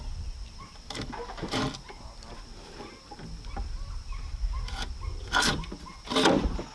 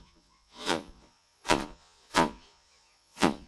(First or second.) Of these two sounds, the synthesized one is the second